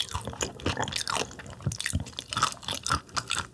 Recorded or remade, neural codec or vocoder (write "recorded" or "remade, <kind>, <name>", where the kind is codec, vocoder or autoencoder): recorded